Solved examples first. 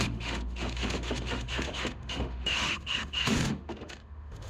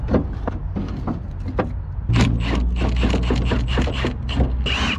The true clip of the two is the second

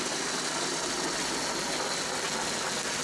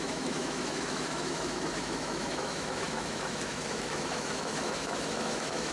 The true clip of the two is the first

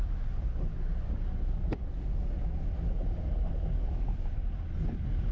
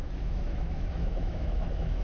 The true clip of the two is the first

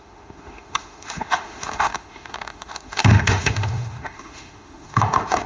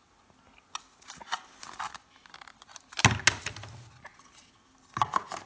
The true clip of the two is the second